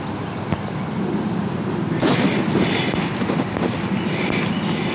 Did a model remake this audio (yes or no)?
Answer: no